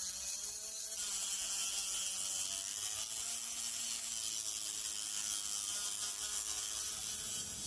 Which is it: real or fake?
real